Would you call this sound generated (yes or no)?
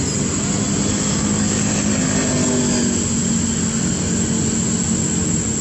no